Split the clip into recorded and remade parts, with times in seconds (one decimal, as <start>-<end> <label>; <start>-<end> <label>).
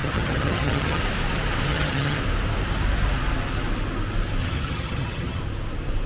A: 0.0-1.0 remade; 1.0-1.7 recorded; 1.7-2.2 remade; 2.2-4.4 recorded; 4.4-5.4 remade; 5.4-6.1 recorded